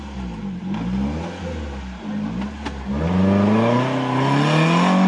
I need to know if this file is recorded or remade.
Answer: recorded